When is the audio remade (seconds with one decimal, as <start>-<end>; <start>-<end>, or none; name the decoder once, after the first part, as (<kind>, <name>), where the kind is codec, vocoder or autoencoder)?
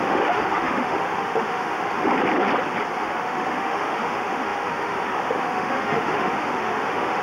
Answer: 0.0-2.1 (autoencoder, DAC-VAE); 3.0-7.2